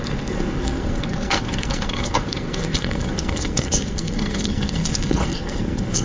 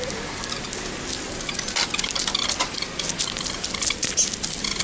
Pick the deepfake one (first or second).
first